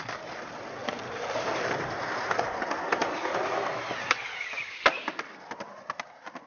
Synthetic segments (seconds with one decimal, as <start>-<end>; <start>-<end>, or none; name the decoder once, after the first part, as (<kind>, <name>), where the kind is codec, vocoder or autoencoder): 0.8-2.3 (vocoder, BigVGAN v2)